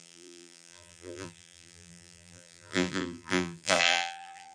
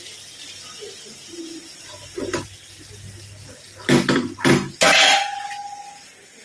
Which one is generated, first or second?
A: first